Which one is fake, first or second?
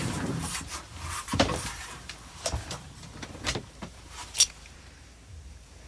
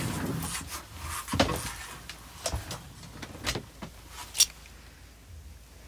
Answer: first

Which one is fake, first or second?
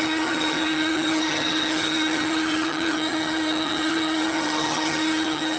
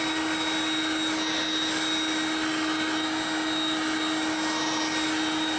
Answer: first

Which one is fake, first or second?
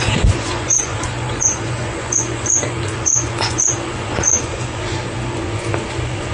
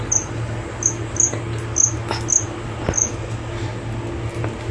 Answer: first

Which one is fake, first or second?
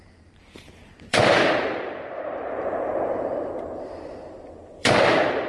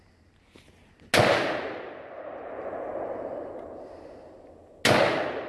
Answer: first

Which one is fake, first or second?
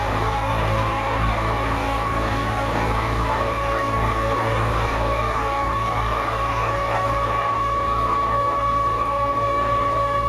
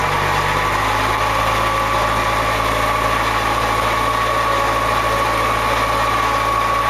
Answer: first